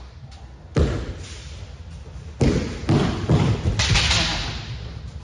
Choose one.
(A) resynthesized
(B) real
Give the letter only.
B